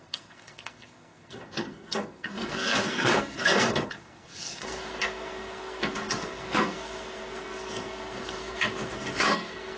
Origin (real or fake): fake